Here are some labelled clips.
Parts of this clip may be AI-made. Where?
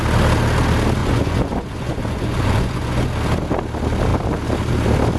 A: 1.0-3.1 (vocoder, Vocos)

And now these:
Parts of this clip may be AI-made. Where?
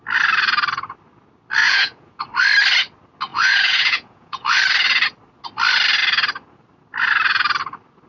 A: 1.6-2.2 (vocoder, Vocos); 3.3-4.6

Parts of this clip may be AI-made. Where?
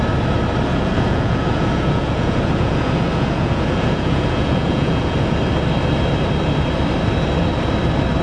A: 0.7-5.3 (vocoder, Vocos)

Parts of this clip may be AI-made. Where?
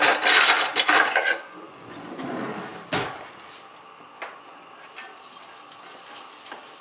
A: 1.0-2.3 (vocoder, Vocos)